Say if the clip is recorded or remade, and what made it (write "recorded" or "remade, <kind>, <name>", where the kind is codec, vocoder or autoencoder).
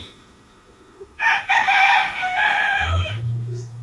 remade, autoencoder, DAC-VAE